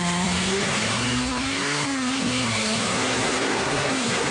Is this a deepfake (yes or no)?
yes